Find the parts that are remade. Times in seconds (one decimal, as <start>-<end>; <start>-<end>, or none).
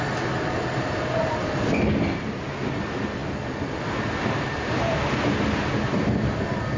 none